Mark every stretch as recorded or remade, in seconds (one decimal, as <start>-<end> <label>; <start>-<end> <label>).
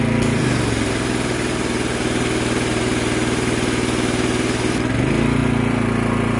0.0-5.4 recorded; 5.4-6.4 remade